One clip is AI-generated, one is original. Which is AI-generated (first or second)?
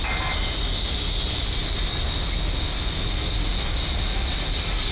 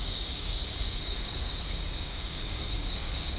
second